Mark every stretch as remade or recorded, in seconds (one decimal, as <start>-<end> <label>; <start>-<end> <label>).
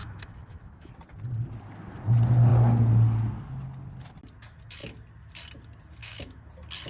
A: 0.0-0.9 remade; 0.9-6.0 recorded; 6.0-6.5 remade; 6.5-6.9 recorded